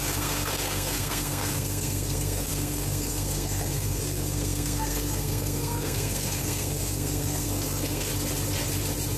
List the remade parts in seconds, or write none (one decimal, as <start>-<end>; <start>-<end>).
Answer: 0.0-8.1